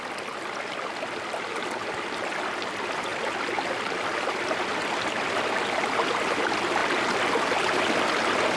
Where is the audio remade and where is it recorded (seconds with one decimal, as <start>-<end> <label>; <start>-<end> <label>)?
0.0-8.6 recorded